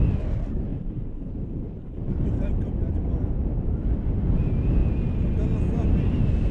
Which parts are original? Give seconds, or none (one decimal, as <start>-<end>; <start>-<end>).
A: 0.0-0.7; 3.8-6.5